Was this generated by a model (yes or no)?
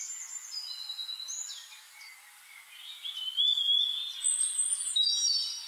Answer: no